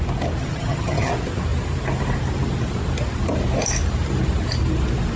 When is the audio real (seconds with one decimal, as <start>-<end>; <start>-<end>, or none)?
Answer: 0.0-0.4; 1.1-5.2